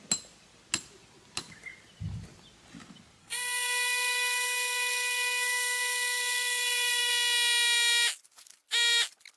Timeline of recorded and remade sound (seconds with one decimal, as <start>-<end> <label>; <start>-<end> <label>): 0.0-3.2 recorded; 3.2-7.1 remade; 7.1-9.4 recorded